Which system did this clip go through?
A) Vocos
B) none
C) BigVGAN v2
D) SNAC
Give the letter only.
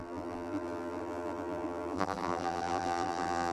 C